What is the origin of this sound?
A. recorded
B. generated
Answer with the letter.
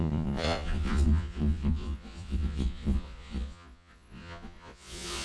B